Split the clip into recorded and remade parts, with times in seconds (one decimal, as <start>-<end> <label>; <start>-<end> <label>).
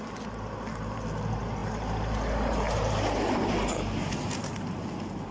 0.0-5.3 recorded